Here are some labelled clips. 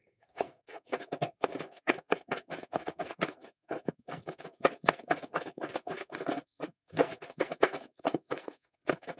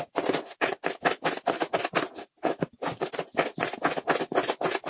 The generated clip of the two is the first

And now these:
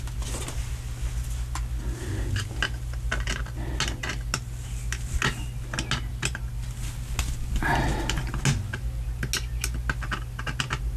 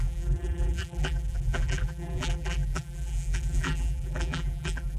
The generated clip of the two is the second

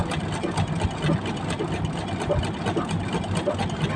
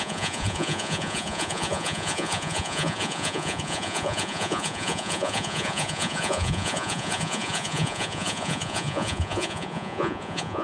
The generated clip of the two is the second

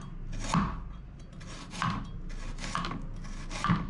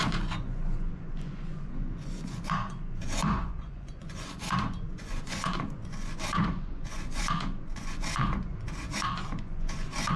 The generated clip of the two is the second